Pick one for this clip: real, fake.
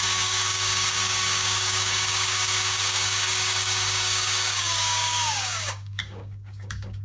fake